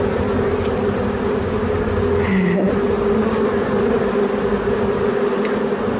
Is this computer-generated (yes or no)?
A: no